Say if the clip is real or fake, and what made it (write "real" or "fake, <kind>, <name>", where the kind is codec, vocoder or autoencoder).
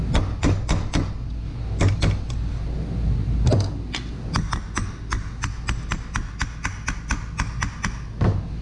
real